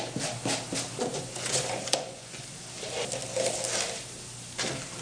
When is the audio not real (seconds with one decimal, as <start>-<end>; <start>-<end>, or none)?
1.1-2.4